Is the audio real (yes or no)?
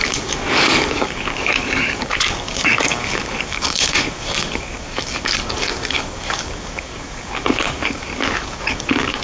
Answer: no